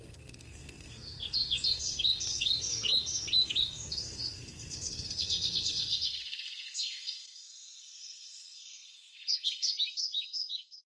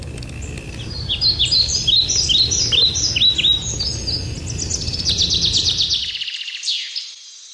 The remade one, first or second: first